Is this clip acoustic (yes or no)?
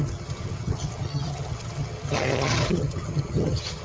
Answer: no